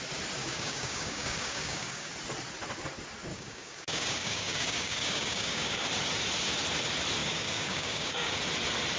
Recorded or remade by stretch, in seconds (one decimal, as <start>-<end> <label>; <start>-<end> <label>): 0.0-0.4 recorded; 0.4-2.1 remade; 2.1-3.3 recorded; 3.3-5.8 remade; 5.8-7.2 recorded; 7.2-8.3 remade; 8.3-9.0 recorded